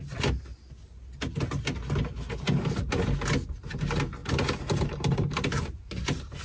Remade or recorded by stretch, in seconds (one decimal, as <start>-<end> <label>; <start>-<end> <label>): 0.0-4.2 recorded; 4.2-6.4 remade